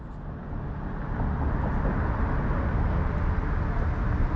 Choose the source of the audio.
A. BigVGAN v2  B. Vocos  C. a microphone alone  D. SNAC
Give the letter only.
C